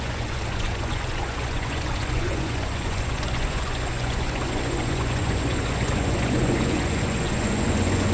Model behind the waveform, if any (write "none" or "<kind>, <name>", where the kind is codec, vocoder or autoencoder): vocoder, Vocos